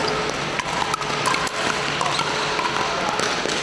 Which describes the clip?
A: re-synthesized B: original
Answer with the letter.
B